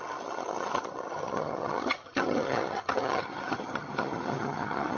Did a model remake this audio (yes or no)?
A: yes